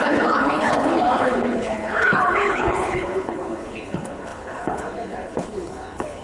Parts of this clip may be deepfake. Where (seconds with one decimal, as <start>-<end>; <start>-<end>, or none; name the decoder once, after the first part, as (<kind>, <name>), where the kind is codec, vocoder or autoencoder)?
0.0-6.2 (codec, HILCodec)